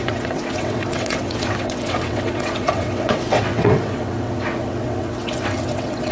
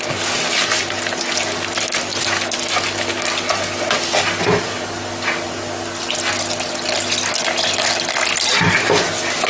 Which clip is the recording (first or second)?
second